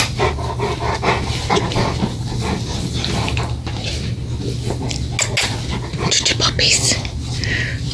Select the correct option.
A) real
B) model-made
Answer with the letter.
A